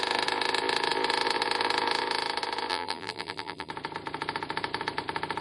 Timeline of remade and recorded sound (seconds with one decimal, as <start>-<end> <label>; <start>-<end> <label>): 0.0-2.7 recorded; 2.7-3.7 remade; 3.7-5.4 recorded